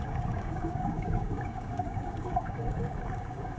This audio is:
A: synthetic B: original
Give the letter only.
A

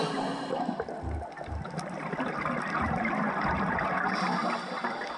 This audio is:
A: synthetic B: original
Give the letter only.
B